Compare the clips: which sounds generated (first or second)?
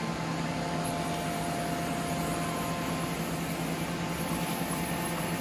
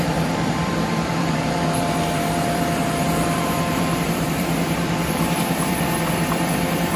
second